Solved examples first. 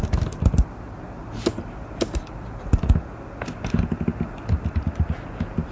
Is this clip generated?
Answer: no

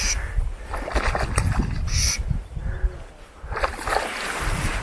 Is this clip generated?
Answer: no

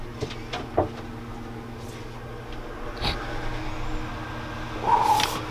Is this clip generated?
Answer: no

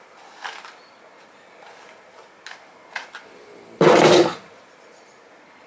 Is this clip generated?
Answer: no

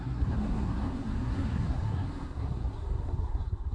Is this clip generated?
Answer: yes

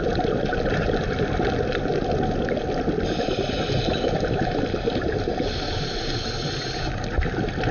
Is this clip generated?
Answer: no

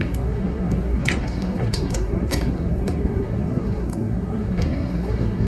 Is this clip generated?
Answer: yes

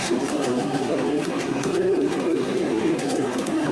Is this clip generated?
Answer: yes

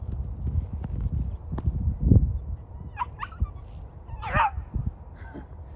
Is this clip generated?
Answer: no